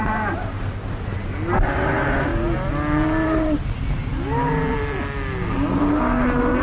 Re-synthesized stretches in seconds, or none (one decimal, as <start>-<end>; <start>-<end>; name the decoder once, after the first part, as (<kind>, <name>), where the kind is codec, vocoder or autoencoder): none